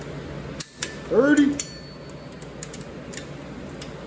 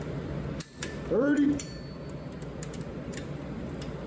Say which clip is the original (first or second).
first